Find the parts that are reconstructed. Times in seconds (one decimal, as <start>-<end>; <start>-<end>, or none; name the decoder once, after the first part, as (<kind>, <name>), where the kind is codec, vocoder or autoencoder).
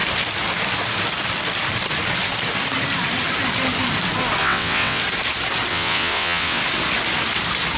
4.4-5.0 (vocoder, WaveNeXt); 5.7-6.6